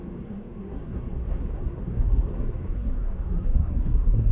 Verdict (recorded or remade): remade